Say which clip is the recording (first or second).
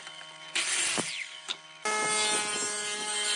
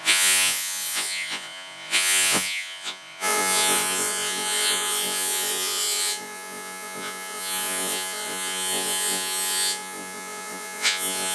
first